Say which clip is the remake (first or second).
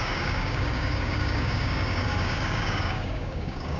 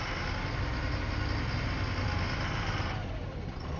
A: first